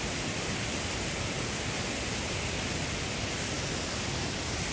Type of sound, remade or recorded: recorded